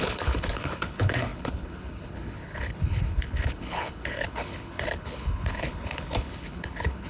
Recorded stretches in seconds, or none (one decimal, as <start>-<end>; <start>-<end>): none